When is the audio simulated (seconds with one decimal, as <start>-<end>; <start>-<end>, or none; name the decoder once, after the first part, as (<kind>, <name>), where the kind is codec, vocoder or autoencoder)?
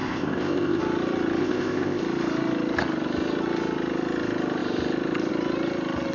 0.0-0.8 (codec, ZipCodec); 1.4-2.0